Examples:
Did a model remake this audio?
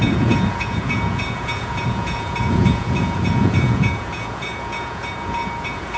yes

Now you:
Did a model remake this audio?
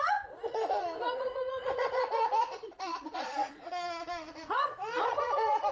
yes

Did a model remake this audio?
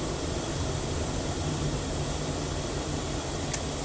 no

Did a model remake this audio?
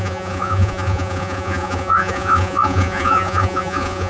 yes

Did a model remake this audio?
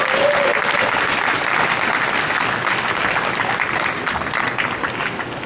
no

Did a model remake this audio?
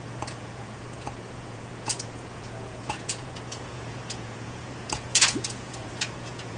yes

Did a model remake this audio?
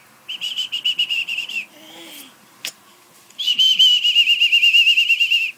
no